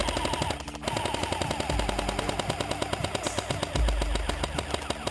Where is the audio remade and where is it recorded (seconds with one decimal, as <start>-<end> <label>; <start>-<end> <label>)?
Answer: 0.0-5.1 recorded